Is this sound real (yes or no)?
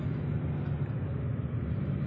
yes